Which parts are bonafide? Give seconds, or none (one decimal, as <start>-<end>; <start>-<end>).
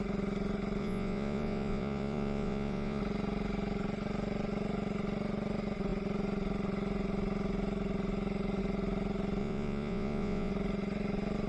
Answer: 0.0-0.8; 3.0-9.4; 10.5-11.5